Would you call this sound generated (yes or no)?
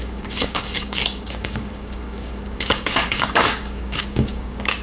yes